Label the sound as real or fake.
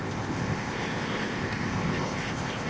fake